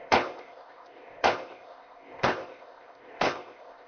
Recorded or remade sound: remade